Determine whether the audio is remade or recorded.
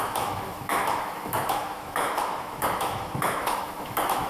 remade